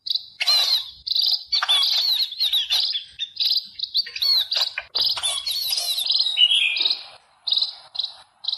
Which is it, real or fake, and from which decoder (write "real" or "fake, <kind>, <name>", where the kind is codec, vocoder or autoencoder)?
real